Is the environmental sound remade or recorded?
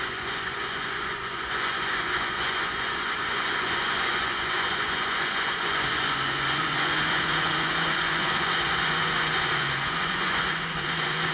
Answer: remade